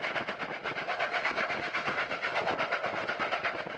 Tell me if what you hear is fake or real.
real